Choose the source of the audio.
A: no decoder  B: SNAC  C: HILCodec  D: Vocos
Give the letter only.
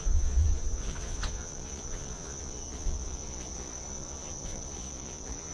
D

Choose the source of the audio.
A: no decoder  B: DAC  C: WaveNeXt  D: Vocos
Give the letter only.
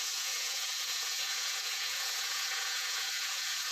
D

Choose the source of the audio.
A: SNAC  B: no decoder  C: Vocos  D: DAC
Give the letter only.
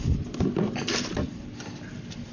B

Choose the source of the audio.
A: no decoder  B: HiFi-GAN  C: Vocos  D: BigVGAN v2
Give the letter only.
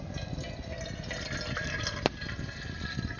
A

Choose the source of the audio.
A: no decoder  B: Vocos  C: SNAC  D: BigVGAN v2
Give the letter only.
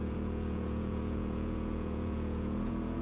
B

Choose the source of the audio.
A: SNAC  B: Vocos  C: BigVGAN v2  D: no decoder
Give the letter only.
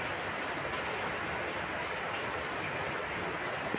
D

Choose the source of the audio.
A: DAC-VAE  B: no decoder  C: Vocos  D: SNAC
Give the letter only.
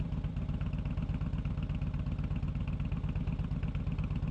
B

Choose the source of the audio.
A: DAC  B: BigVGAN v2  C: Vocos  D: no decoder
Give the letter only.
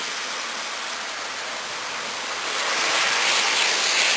D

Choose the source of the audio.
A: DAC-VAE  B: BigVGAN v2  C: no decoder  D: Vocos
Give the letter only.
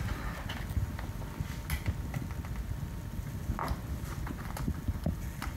C